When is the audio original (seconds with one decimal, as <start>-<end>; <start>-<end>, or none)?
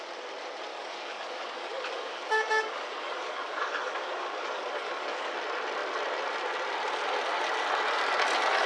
0.0-0.7; 5.3-8.7